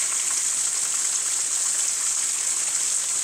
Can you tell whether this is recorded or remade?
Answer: recorded